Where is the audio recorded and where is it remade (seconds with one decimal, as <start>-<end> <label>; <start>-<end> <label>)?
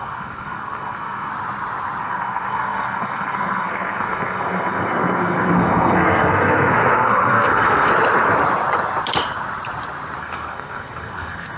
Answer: 0.0-1.3 remade; 1.3-2.0 recorded; 2.0-7.9 remade; 7.9-10.2 recorded; 10.2-11.6 remade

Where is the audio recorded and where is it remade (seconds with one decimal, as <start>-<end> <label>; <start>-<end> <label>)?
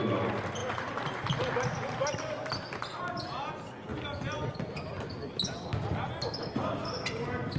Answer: 0.0-7.6 recorded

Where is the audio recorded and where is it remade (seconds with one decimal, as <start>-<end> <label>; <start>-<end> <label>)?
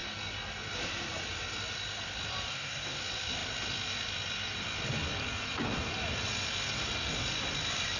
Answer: 0.0-2.5 recorded; 2.5-3.0 remade; 3.0-8.0 recorded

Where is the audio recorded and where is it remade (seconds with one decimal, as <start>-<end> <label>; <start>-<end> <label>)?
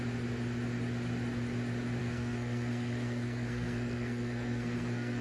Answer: 0.0-2.0 recorded; 2.0-5.2 remade